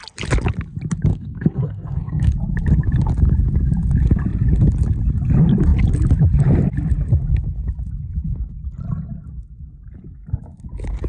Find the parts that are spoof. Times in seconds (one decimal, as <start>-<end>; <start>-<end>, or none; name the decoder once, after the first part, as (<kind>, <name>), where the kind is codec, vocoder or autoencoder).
1.1-2.3 (codec, SNAC)